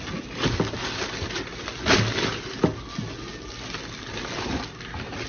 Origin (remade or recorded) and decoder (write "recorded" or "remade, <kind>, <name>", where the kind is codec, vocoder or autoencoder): recorded